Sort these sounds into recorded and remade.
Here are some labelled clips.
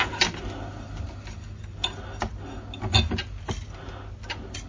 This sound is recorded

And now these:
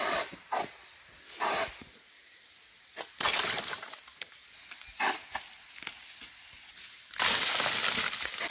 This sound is recorded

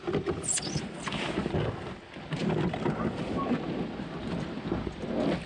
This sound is recorded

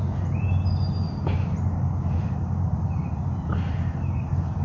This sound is recorded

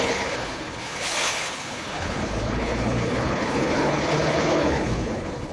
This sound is remade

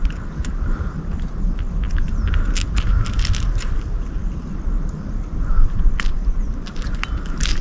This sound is recorded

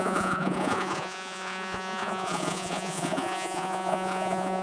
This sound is remade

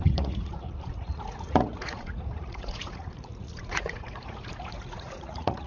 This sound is remade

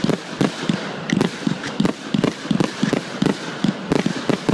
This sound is recorded